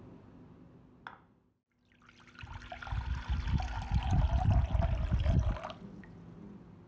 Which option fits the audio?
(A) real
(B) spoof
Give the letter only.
A